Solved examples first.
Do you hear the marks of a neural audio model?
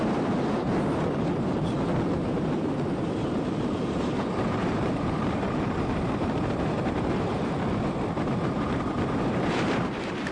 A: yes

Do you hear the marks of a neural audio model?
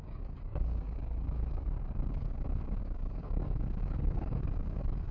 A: yes